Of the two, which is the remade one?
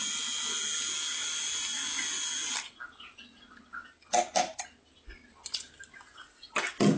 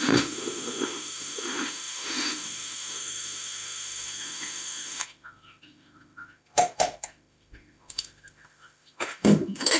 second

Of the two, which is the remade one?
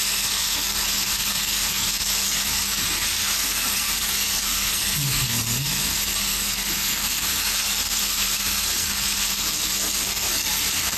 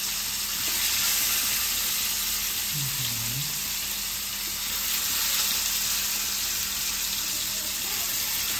first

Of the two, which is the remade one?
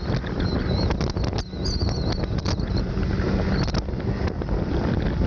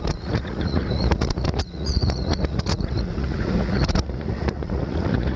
second